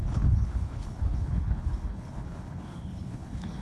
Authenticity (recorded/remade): remade